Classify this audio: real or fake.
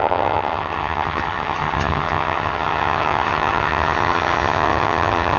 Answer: fake